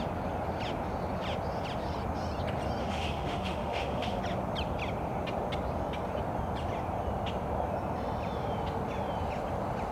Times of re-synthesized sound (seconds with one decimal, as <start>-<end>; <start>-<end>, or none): 2.8-4.2